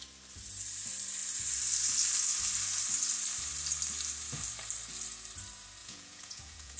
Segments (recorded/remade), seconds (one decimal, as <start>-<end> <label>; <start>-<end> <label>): 0.0-5.8 recorded; 5.8-6.8 remade